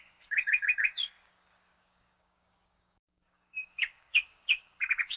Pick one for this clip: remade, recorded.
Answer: remade